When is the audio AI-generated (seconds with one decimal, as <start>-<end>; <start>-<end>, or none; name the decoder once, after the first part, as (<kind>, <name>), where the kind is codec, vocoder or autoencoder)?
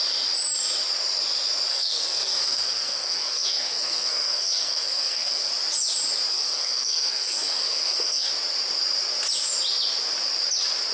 1.7-5.5 (codec, SNAC); 6.3-8.3